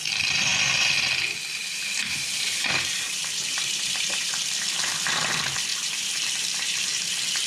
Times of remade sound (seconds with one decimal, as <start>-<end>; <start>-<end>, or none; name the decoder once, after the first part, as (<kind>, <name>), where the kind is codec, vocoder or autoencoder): 1.6-4.4 (vocoder, BigVGAN v2); 5.7-7.0